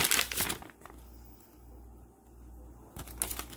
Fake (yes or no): no